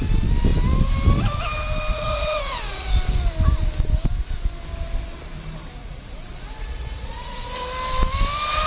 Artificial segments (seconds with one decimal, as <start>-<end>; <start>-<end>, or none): 1.9-2.9; 5.8-7.5